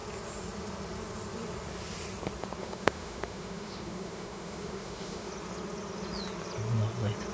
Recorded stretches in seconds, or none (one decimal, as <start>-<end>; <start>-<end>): 0.0-2.6; 5.3-7.3